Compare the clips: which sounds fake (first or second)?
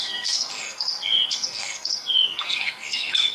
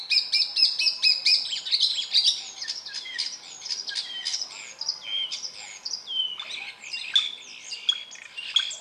first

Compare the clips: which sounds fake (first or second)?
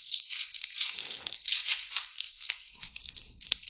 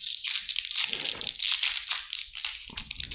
first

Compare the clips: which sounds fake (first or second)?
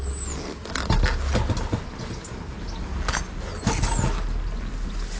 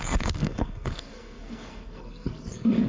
second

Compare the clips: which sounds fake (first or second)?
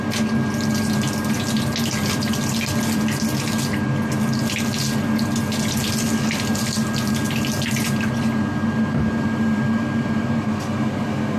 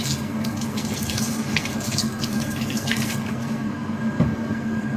second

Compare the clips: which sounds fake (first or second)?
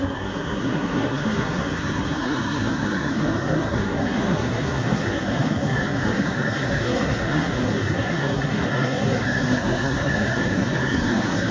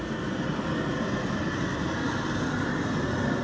first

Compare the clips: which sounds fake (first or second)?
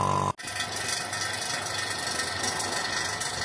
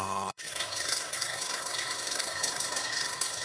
second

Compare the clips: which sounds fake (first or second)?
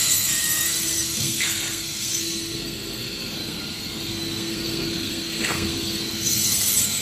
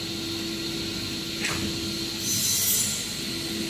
first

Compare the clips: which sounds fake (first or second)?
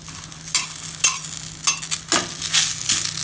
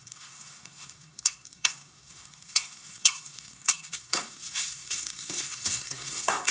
second